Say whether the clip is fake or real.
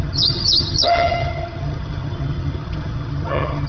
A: fake